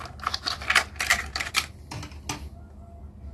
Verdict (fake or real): real